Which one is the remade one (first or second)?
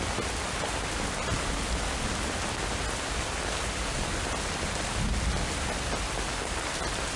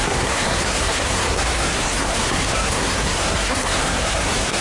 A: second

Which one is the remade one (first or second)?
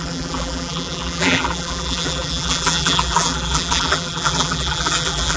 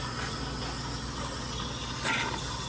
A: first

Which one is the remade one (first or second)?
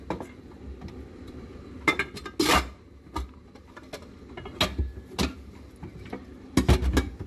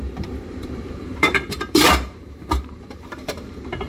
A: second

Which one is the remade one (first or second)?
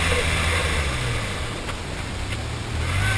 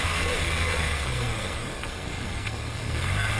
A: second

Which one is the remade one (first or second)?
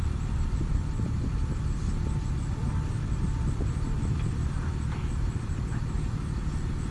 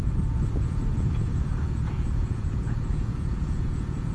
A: second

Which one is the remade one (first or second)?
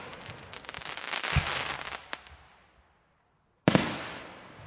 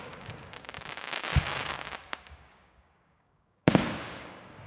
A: second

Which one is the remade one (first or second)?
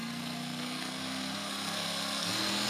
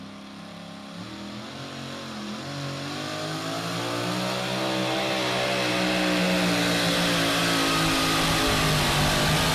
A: first